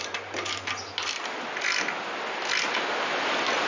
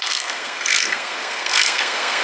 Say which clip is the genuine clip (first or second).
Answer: first